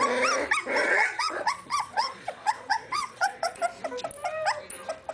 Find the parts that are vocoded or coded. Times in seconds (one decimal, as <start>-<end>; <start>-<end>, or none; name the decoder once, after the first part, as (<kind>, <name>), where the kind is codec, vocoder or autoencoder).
0.8-3.6 (vocoder, Vocos)